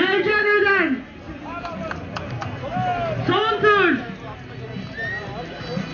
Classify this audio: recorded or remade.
recorded